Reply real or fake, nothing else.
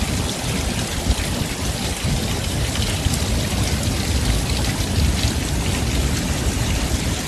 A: real